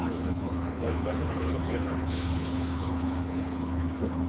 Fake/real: fake